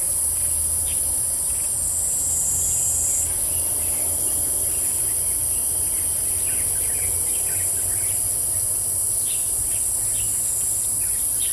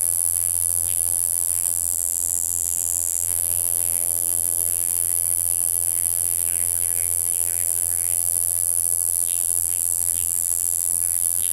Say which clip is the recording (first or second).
first